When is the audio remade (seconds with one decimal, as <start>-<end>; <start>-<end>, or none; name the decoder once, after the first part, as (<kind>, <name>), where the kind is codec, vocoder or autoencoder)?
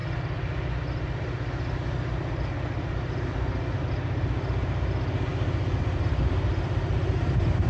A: none